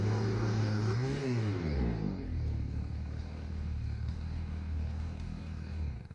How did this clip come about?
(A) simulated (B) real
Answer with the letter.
A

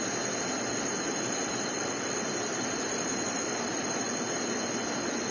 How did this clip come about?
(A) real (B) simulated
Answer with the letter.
A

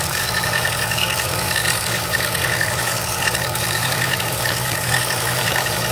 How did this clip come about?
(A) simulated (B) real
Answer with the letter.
A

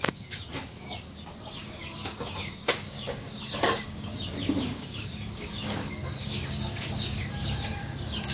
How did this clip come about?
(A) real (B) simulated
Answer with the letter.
B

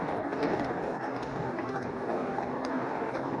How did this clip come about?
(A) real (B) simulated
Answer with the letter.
B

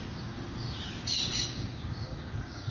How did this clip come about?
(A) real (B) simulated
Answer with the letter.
B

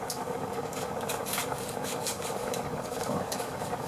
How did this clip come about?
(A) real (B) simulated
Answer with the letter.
B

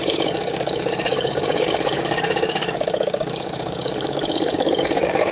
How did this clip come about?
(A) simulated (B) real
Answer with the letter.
A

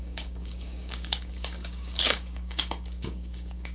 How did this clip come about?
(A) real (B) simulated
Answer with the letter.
B